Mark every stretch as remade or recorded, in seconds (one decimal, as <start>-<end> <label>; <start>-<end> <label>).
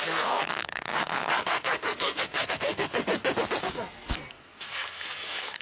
0.0-3.1 remade; 3.1-3.6 recorded; 3.6-5.6 remade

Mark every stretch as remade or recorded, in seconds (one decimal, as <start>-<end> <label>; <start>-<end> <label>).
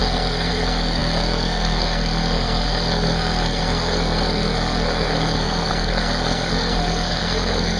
0.0-7.8 remade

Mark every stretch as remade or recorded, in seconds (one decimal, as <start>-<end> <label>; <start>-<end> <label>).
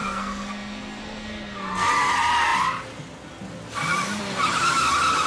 0.0-1.9 remade; 1.9-5.3 recorded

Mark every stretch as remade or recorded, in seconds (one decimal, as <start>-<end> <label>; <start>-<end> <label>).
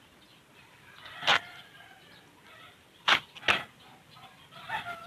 0.0-5.1 recorded